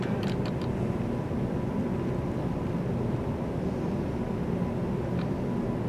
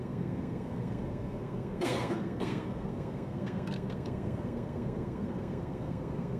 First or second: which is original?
first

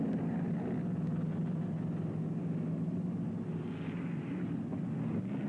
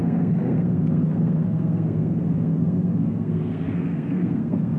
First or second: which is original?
first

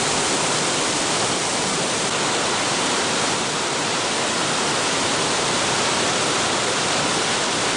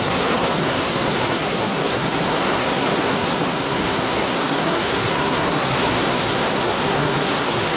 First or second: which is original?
first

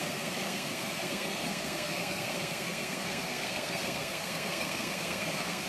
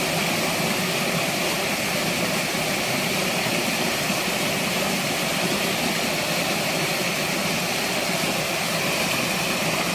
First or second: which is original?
second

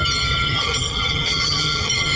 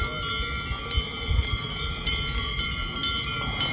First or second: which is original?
second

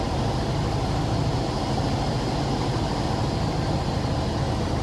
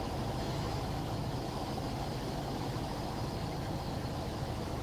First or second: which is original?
first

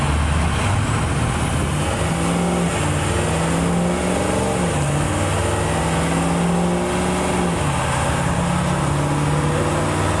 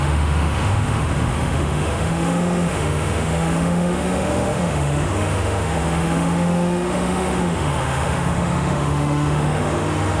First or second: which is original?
first